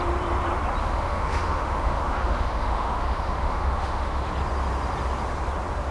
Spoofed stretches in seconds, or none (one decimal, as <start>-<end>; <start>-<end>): 0.8-4.3